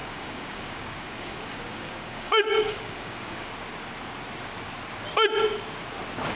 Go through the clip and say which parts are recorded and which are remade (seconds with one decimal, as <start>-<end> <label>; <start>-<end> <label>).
0.0-3.5 remade; 3.5-6.4 recorded